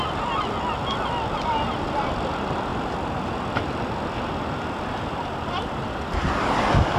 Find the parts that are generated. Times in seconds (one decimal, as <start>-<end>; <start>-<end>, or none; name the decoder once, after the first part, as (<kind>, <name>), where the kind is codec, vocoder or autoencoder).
none